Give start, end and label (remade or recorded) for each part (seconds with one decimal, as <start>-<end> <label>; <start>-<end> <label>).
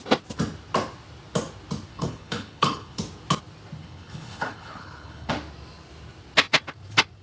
0.0-1.9 recorded; 1.9-3.0 remade; 3.0-3.8 recorded; 3.8-5.3 remade; 5.3-7.2 recorded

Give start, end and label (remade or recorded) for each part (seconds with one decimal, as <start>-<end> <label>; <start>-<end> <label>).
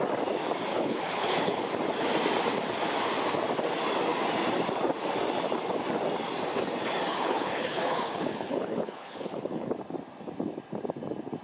0.0-0.7 recorded; 0.7-1.6 remade; 1.6-7.1 recorded; 7.1-9.7 remade; 9.7-11.4 recorded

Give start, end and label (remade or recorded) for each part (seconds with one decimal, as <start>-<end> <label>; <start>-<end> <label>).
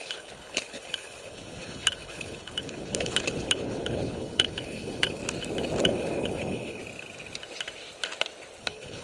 0.0-5.2 remade; 5.2-5.8 recorded; 5.8-6.8 remade; 6.8-8.6 recorded; 8.6-9.0 remade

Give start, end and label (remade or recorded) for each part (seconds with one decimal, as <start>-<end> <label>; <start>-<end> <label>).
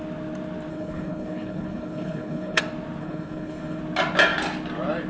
0.0-0.7 recorded; 0.7-2.6 remade; 2.6-3.0 recorded; 3.0-3.8 remade; 3.8-5.1 recorded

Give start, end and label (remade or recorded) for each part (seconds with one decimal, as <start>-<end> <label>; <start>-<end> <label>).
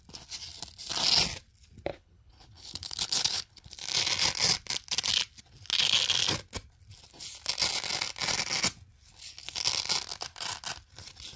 0.0-1.9 recorded; 1.9-3.7 remade; 3.7-11.4 recorded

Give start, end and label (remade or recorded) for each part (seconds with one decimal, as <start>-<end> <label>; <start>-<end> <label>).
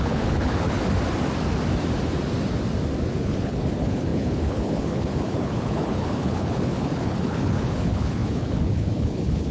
0.0-0.8 remade; 0.8-3.1 recorded; 3.1-9.5 remade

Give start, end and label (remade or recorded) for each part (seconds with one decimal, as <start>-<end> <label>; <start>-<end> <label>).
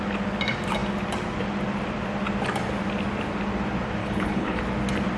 0.0-4.0 recorded; 4.0-4.6 remade; 4.6-5.2 recorded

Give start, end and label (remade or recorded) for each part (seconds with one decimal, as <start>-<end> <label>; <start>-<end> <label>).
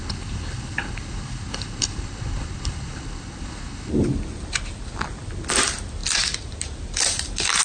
0.0-3.9 remade; 3.9-7.6 recorded